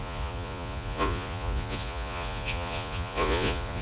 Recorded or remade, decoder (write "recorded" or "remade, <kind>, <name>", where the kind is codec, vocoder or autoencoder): remade, vocoder, Vocos